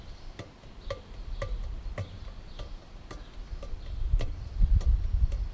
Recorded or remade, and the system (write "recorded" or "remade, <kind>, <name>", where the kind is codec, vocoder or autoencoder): recorded